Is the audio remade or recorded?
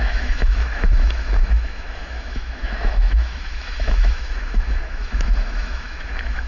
remade